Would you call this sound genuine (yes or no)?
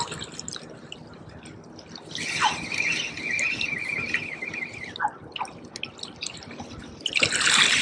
yes